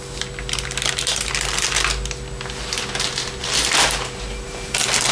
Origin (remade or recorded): recorded